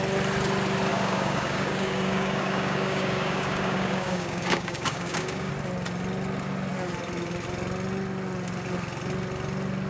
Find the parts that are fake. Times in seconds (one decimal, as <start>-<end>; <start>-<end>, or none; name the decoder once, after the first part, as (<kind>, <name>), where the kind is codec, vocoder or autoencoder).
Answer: 0.9-5.5 (codec, DAC)